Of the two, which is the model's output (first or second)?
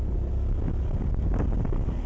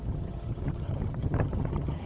second